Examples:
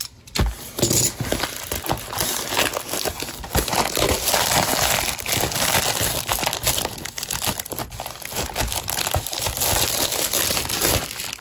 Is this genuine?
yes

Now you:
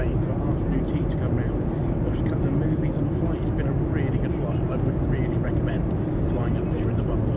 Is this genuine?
yes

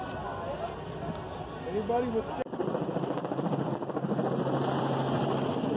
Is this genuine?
yes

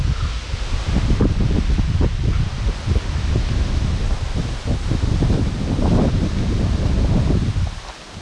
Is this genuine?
yes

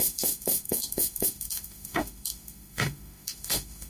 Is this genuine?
no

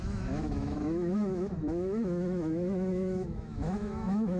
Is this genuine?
no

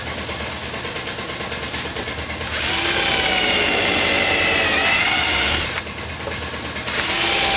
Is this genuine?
yes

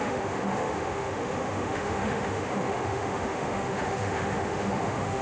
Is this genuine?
no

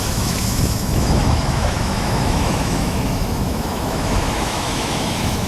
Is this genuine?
no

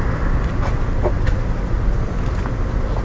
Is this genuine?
yes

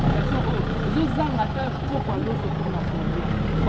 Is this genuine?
yes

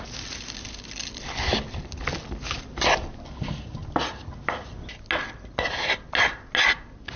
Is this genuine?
yes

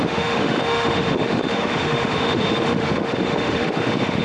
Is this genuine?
no